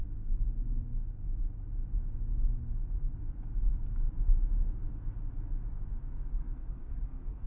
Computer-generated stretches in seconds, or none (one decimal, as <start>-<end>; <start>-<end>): 6.4-7.5